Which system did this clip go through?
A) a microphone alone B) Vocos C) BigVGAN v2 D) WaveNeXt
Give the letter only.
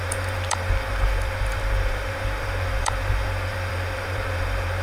C